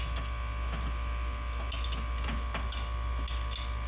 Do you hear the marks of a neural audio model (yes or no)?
no